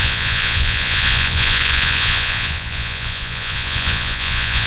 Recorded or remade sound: remade